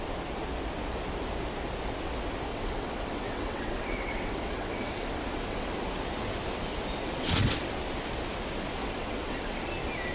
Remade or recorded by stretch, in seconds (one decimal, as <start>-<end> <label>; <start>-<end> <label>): 0.0-2.5 recorded; 2.5-5.7 remade; 5.7-7.0 recorded; 7.0-7.7 remade; 7.7-8.8 recorded; 8.8-9.7 remade; 9.7-10.1 recorded